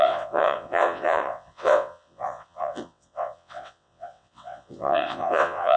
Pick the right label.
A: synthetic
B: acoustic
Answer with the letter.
A